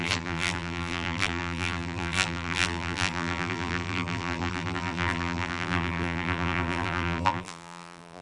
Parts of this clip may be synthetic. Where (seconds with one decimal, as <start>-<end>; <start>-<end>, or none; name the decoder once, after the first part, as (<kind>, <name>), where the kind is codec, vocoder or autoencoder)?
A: 0.0-8.2 (vocoder, BigVGAN v2)